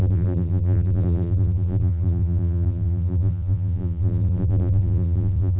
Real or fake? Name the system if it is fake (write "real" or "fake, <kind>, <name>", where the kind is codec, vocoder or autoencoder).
fake, vocoder, BigVGAN v2